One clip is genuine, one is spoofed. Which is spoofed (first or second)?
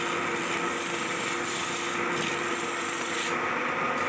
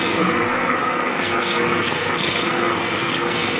second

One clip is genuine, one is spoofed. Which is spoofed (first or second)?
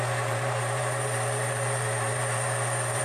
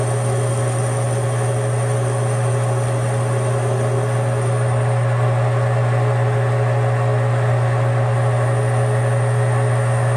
first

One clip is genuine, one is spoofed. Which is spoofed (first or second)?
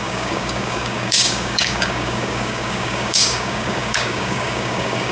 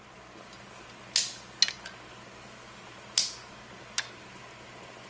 first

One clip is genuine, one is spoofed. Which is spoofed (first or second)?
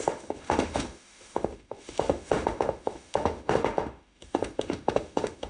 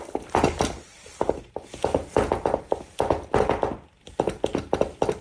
first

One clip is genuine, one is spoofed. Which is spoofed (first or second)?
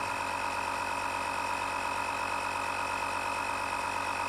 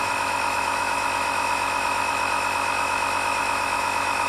second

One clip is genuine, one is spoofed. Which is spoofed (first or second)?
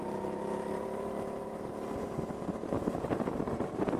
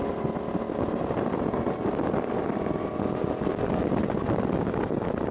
first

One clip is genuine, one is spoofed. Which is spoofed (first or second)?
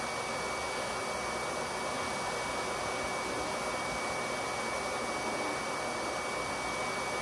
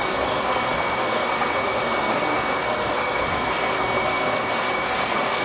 second